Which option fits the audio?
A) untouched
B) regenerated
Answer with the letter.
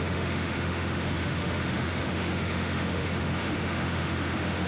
B